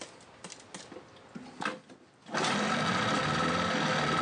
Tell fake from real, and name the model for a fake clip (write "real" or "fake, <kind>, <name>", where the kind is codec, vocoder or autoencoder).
real